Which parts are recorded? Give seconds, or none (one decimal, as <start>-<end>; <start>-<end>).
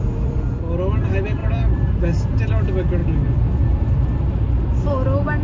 0.0-1.4; 2.0-3.0; 4.3-5.4